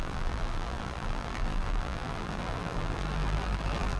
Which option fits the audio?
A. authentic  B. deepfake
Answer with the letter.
B